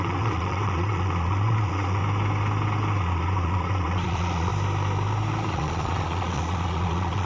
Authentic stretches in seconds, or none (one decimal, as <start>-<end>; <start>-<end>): 2.0-2.9; 4.5-5.5